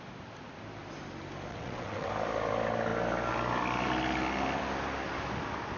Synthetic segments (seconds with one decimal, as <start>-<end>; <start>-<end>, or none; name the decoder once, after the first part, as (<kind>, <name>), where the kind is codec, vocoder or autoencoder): 1.5-2.1 (vocoder, WaveNeXt)